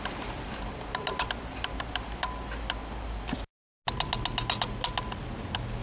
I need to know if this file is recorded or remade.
recorded